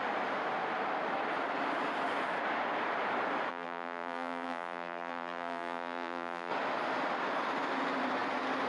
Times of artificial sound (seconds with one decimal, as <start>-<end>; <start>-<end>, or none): 3.5-6.5